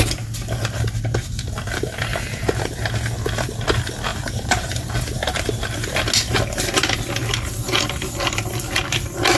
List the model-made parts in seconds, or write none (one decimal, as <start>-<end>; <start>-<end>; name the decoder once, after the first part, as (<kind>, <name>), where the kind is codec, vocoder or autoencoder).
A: 4.1-4.9 (vocoder, BigVGAN v2)